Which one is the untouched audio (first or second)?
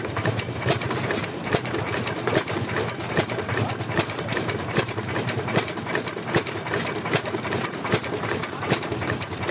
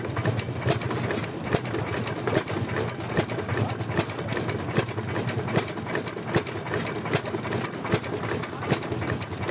second